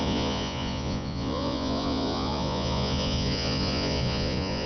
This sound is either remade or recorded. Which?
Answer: remade